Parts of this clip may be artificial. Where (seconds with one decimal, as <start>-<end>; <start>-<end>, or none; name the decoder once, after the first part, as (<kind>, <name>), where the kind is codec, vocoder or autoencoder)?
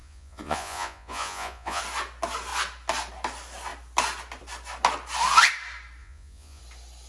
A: 0.0-1.8 (vocoder, Vocos); 6.0-6.6